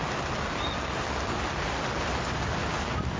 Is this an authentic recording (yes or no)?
yes